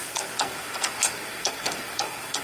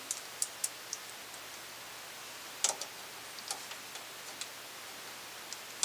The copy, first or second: first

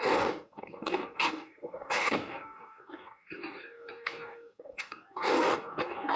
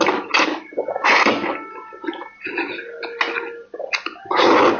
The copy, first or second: first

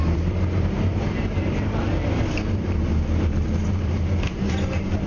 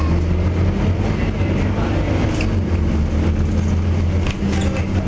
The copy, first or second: first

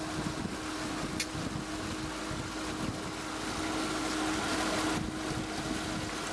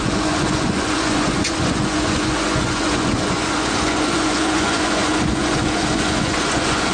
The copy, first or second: second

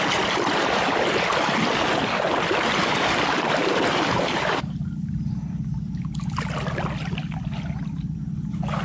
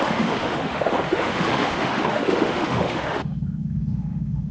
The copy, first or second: second